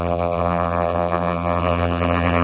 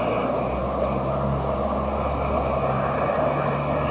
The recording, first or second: second